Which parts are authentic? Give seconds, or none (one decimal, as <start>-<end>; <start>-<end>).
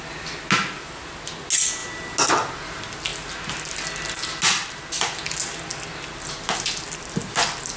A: 0.0-7.8